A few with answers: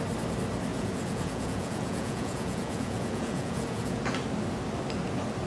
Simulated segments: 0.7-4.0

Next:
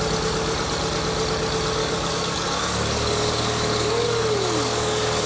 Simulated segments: 1.8-5.3

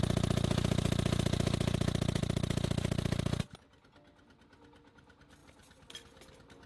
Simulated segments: none

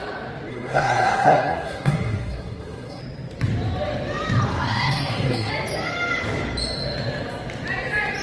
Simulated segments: 0.5-3.0; 4.5-5.5

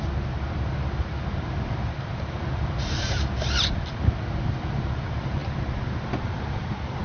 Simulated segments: 0.0-7.0

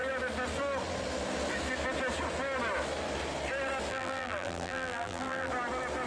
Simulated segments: 3.9-5.5